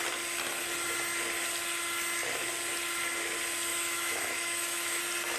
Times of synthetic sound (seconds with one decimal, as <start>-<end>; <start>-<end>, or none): 3.7-5.0